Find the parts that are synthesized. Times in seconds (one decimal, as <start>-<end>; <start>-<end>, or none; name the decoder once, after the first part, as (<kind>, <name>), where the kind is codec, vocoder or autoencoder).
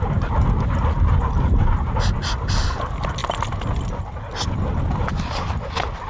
none